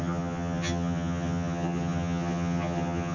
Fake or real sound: fake